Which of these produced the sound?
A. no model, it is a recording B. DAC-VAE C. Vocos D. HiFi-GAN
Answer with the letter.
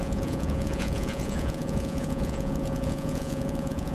C